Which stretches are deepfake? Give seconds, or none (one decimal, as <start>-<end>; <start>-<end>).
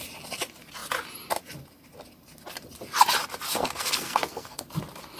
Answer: 3.5-4.6